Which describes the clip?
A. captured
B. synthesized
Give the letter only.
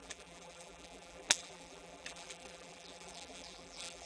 B